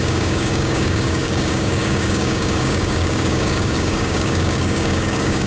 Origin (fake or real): fake